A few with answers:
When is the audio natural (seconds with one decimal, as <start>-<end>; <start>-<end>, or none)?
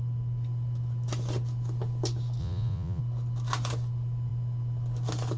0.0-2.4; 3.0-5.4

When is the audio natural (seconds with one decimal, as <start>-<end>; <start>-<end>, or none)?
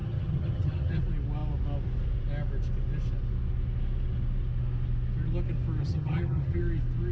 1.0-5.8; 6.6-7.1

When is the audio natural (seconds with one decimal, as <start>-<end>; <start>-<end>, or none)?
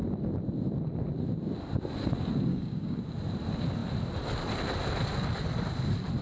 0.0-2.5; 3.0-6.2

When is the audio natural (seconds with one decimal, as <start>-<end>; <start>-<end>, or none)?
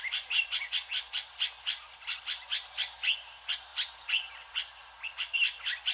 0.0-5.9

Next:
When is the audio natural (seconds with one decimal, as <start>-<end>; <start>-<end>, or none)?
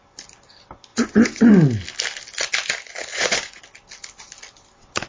0.0-0.9; 1.5-3.1; 3.6-5.1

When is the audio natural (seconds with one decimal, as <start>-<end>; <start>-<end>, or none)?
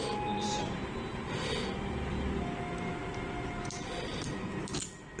0.0-5.2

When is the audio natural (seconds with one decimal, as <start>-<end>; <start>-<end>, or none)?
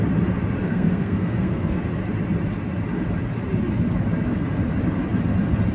0.0-0.6; 1.8-5.7